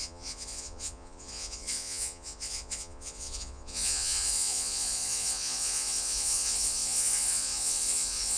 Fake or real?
fake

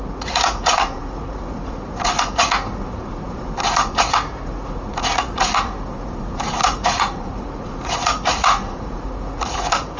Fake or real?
fake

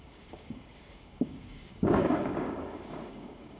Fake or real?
fake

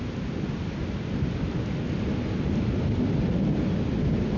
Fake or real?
real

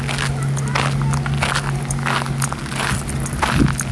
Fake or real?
real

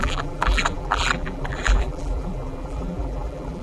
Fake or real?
fake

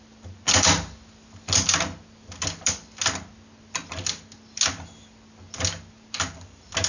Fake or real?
real